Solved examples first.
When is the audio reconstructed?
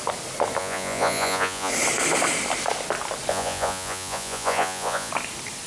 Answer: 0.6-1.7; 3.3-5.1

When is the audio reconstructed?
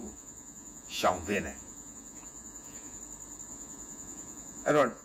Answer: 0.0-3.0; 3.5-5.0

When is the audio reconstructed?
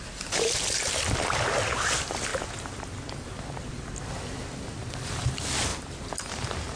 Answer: none